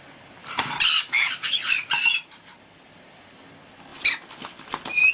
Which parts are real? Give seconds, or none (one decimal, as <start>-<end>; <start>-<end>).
0.0-0.4; 3.5-5.1